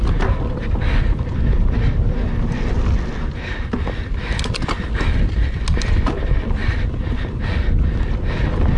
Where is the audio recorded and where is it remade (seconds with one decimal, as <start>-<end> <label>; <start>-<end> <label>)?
0.0-8.8 recorded